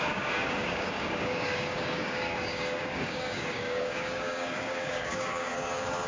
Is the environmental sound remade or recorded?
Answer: remade